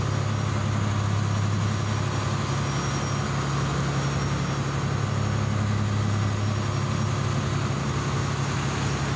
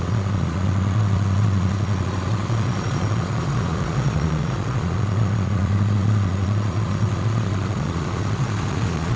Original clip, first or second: first